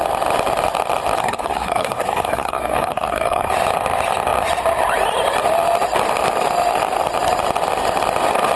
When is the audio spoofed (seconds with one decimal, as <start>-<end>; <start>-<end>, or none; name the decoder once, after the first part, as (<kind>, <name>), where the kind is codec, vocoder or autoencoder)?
1.2-3.5 (codec, SNAC)